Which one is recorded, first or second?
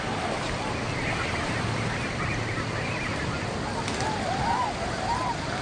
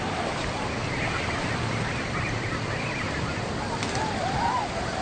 first